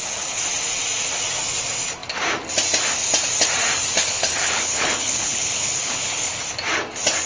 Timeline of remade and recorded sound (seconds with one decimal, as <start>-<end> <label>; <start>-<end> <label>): 0.0-4.0 recorded; 4.0-6.4 remade; 6.4-7.3 recorded